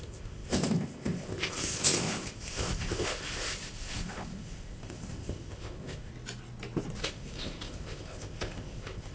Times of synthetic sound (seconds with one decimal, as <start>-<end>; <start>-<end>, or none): 0.0-6.1; 7.0-9.1